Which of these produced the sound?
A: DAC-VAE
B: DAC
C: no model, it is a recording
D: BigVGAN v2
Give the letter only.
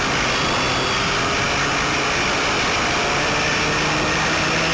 C